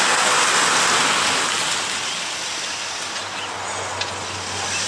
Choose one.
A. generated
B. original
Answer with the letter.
B